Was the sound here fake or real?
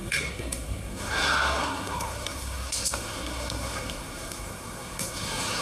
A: fake